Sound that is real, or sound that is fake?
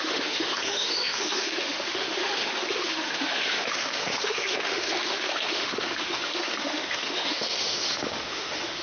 fake